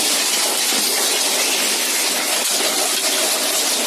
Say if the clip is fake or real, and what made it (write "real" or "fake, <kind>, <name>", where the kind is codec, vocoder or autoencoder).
real